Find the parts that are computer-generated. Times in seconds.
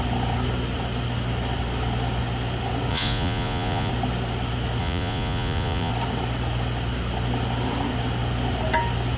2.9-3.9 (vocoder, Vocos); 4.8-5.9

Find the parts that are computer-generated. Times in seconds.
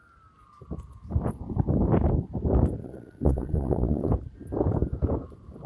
2.8-4.1 (vocoder, Vocos)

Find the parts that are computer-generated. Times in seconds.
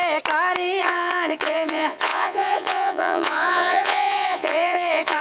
0.8-5.2 (vocoder, Vocos)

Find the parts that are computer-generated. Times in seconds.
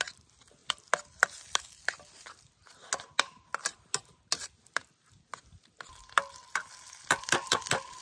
none